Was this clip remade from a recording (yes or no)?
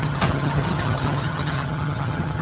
yes